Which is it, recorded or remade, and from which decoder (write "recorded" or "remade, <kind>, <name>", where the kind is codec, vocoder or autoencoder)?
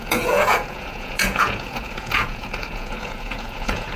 remade, vocoder, Vocos